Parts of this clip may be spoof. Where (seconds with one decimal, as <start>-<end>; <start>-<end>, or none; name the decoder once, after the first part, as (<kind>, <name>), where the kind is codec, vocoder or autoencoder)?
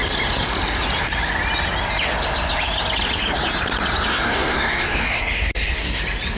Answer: 4.1-6.0 (codec, SNAC)